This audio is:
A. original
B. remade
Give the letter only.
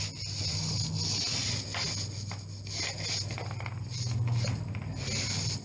A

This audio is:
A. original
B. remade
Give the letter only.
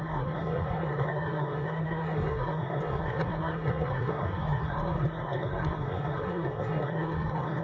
B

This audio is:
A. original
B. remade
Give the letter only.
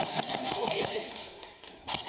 B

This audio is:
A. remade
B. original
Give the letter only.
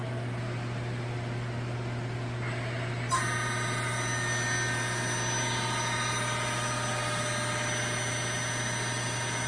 B